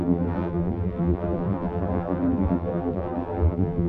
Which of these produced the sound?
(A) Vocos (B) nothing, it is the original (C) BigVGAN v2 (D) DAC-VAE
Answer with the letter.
C